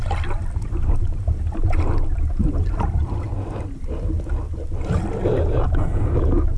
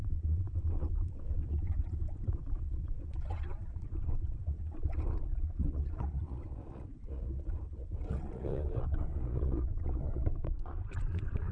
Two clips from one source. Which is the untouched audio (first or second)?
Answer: first